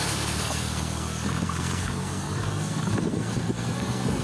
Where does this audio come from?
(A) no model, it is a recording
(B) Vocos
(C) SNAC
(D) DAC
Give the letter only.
C